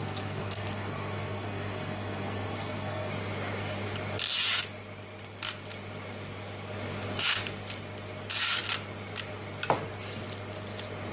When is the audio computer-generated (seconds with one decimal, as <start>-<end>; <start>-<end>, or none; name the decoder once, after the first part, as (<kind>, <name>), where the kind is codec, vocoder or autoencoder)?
0.0-3.1 (codec, SNAC)